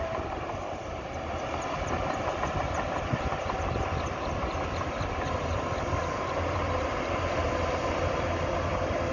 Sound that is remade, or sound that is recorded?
remade